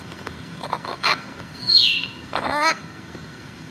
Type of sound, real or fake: fake